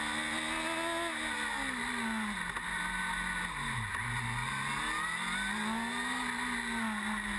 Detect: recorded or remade recorded